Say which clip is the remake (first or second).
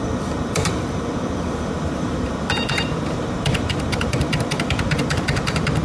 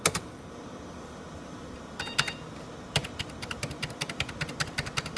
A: first